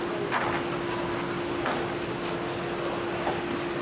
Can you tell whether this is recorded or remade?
recorded